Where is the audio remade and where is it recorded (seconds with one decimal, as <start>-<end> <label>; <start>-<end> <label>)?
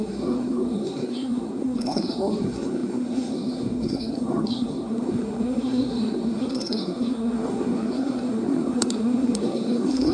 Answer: 0.0-10.1 remade